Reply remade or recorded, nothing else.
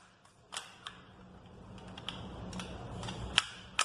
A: recorded